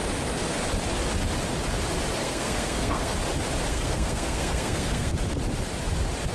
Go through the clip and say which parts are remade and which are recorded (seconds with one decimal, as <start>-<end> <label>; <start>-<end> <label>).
0.0-2.2 recorded; 2.2-3.1 remade; 3.1-3.7 recorded; 3.7-5.1 remade; 5.1-6.3 recorded